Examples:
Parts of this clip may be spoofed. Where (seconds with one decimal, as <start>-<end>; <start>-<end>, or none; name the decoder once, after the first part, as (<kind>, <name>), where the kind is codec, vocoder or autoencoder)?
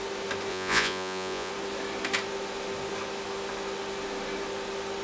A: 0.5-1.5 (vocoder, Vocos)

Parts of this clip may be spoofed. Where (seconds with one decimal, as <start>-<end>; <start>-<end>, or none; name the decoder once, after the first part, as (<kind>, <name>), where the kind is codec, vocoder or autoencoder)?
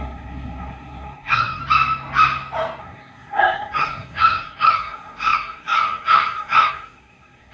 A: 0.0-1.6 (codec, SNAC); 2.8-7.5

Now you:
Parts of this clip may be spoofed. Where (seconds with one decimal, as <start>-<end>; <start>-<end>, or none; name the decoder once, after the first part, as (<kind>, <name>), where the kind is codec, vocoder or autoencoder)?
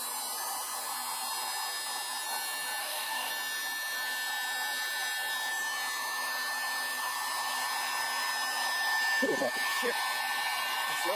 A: 2.8-3.3 (codec, DAC)